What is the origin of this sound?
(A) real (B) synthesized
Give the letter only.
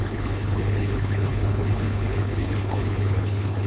B